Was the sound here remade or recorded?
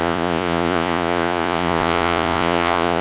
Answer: remade